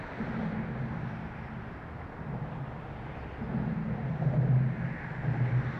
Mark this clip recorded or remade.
recorded